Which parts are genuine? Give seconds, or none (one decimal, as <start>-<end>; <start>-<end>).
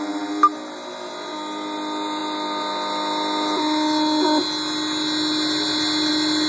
0.0-6.5